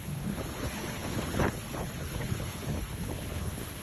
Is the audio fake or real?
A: fake